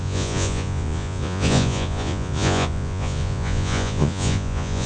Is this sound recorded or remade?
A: remade